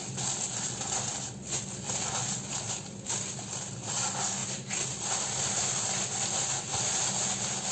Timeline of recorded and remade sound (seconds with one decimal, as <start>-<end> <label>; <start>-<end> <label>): 0.0-7.7 recorded